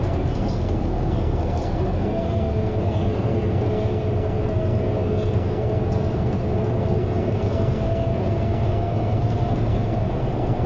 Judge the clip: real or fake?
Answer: fake